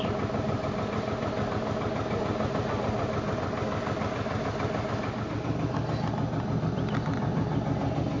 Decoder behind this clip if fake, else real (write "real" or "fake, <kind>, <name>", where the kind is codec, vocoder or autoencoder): real